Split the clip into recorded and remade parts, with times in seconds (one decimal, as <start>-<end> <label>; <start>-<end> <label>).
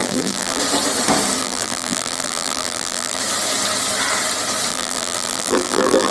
0.0-0.6 remade; 0.6-1.4 recorded; 1.4-3.2 remade; 3.2-4.7 recorded; 4.7-6.1 remade